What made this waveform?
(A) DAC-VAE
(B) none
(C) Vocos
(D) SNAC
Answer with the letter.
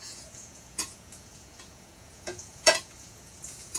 C